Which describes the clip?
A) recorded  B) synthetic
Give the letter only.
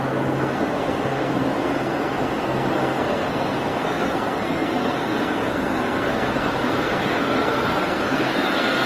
B